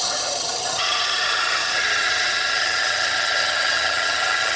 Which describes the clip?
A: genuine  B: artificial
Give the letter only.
B